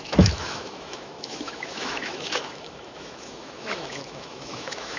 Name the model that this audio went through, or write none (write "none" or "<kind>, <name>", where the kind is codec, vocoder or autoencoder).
autoencoder, DAC-VAE